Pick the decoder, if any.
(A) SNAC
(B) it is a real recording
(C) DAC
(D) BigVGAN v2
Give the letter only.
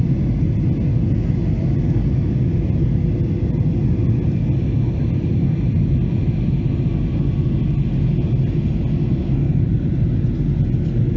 B